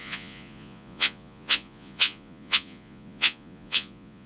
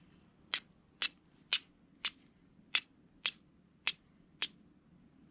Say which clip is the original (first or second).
second